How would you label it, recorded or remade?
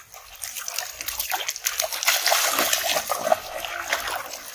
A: recorded